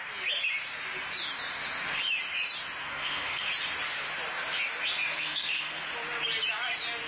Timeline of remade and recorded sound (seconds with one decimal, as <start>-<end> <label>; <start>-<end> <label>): 0.0-2.8 recorded; 2.8-3.5 remade; 3.5-5.1 recorded; 5.1-5.8 remade; 5.8-7.1 recorded